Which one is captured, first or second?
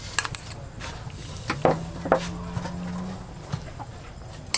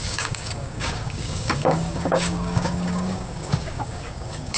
first